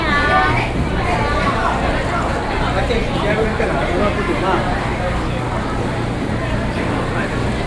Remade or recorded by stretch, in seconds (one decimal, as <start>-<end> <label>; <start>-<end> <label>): 0.0-7.7 recorded